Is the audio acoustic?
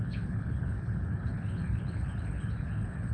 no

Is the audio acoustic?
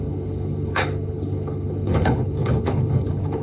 no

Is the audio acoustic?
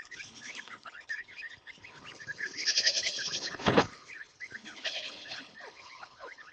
no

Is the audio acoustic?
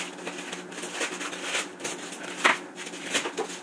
yes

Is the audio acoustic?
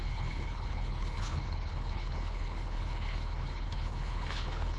no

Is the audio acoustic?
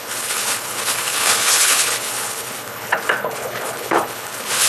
no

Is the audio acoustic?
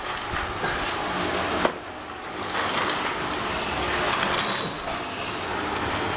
yes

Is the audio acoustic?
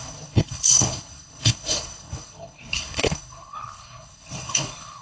no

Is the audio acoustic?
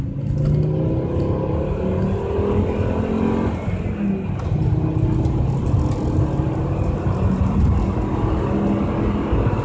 yes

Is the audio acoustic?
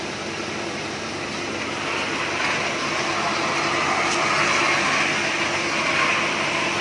yes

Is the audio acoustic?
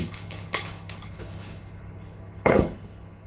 no